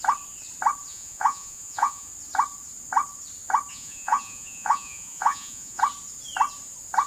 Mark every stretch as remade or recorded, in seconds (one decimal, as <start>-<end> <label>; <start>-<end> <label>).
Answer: 0.0-0.9 recorded; 0.9-2.1 remade; 2.1-3.7 recorded; 3.7-5.8 remade; 5.8-7.1 recorded